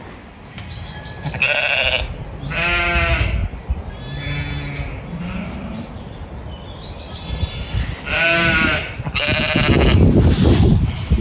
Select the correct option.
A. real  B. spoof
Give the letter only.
A